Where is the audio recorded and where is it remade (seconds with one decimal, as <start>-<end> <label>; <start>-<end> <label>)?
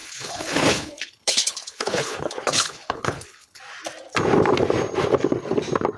0.0-3.6 remade; 3.6-6.0 recorded